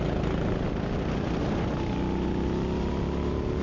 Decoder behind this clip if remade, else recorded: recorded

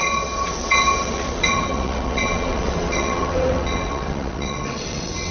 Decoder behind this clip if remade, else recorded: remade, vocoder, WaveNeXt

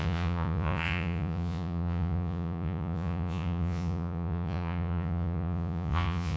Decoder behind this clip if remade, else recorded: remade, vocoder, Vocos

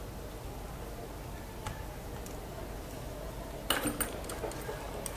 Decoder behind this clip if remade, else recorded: recorded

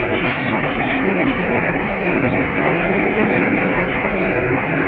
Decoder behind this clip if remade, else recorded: remade, codec, SNAC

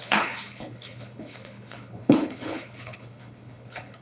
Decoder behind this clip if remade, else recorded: remade, codec, HILCodec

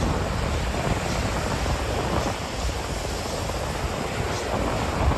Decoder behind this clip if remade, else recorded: recorded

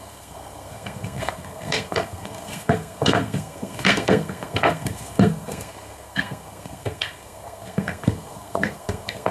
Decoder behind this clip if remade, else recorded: remade, codec, SNAC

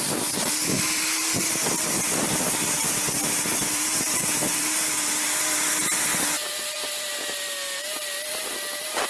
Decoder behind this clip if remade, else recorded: remade, vocoder, BigVGAN v2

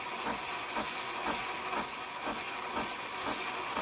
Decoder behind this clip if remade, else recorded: remade, vocoder, Vocos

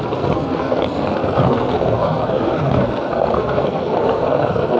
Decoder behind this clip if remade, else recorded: remade, codec, SNAC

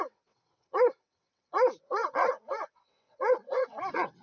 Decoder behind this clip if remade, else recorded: remade, vocoder, WaveNeXt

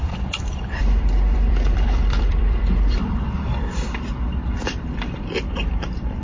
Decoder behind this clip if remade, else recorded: remade, vocoder, BigVGAN v2